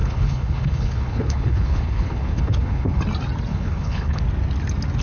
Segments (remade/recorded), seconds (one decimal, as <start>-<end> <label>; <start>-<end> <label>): 0.0-3.0 remade; 3.0-3.5 recorded; 3.5-4.2 remade; 4.2-5.0 recorded